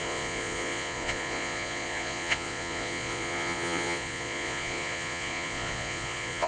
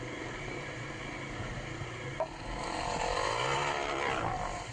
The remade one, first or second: first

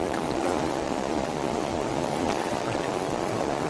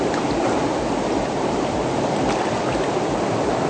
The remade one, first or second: first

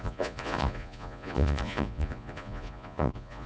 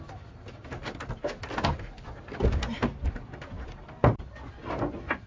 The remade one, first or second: first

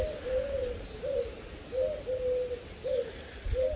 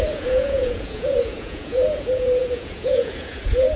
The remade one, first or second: second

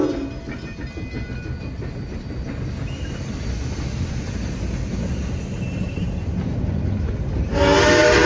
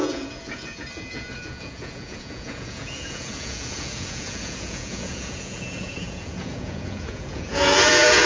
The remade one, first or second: second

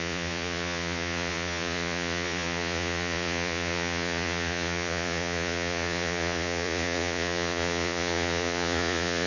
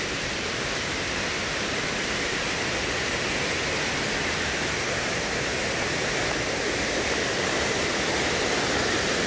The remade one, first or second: first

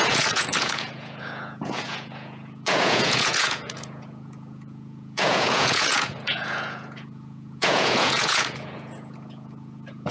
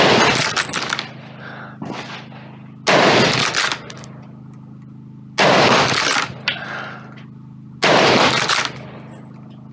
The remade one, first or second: first